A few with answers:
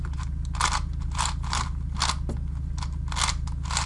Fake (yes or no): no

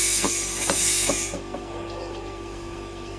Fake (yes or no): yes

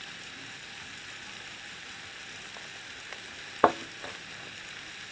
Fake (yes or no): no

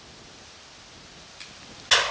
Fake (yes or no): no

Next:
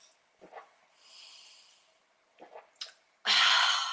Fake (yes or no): no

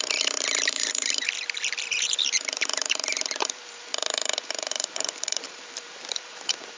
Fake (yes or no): yes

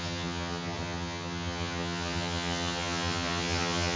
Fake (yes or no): yes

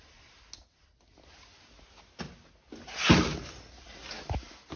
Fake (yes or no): no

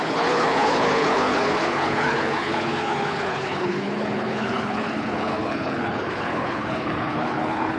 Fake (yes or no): yes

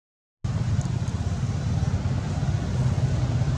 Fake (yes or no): no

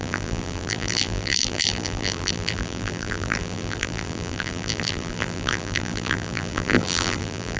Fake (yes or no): yes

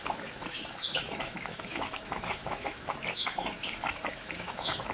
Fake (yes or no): yes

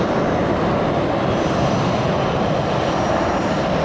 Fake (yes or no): no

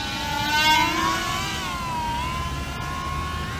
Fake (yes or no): no